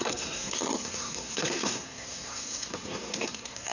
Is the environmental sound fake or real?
fake